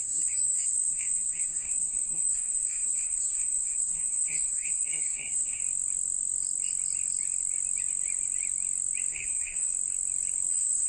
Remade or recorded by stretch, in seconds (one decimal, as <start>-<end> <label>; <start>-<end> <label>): 0.0-5.6 remade; 5.6-9.1 recorded; 9.1-9.7 remade; 9.7-10.5 recorded; 10.5-10.9 remade